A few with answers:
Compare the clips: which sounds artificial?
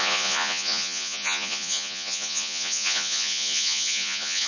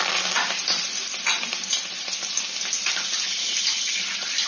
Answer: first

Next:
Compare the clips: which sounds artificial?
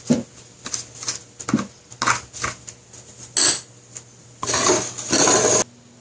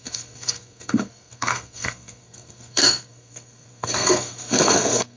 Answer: second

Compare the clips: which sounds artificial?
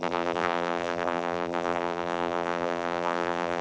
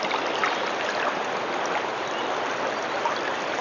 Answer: first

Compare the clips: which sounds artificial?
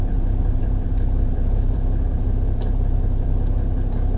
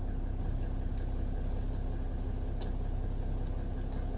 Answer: first